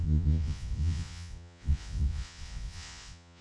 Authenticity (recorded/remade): remade